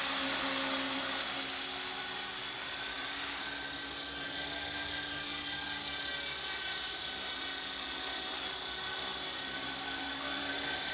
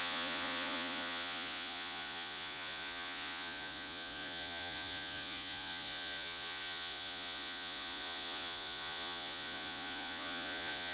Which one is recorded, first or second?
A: first